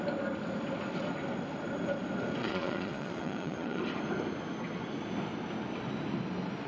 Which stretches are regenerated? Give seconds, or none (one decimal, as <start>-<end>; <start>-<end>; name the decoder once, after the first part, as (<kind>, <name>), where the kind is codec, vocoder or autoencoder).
2.4-3.8 (vocoder, Vocos)